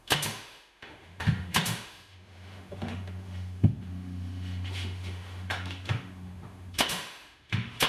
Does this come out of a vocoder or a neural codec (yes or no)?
yes